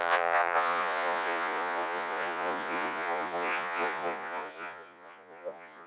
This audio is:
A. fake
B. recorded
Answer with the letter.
A